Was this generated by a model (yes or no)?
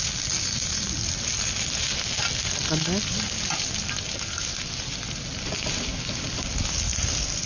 no